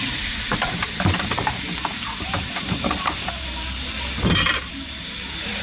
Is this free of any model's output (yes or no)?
no